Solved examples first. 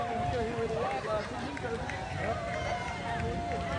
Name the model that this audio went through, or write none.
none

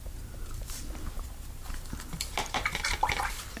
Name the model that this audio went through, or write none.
vocoder, BigVGAN v2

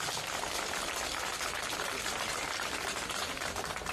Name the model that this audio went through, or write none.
none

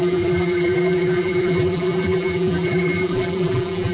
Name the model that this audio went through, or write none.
vocoder, BigVGAN v2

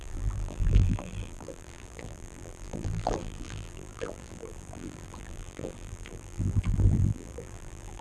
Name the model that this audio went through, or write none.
vocoder, BigVGAN v2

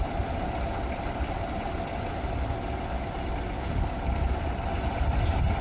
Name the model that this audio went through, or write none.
none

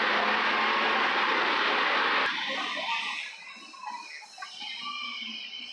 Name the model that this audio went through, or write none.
none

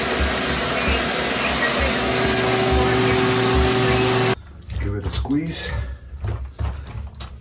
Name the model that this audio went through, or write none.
none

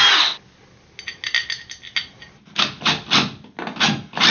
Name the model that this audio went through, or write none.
none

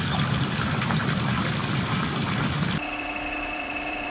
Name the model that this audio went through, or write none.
vocoder, BigVGAN v2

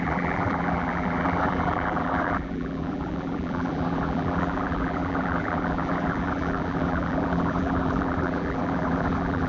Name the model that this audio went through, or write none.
vocoder, BigVGAN v2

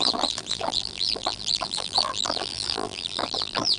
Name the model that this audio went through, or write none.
vocoder, BigVGAN v2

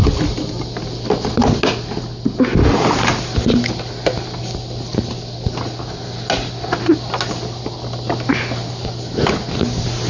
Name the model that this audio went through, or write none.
none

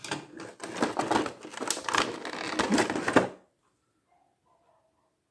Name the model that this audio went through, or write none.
none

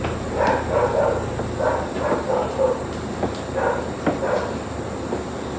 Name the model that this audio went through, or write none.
none